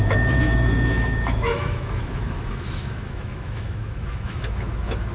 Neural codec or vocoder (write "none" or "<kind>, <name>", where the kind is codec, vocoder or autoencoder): autoencoder, DAC-VAE